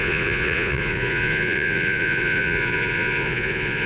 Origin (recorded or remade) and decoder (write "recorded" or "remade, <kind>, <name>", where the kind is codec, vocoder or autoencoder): remade, vocoder, Vocos